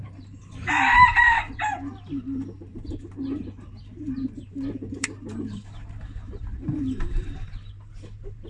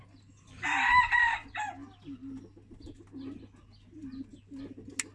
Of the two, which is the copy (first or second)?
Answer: first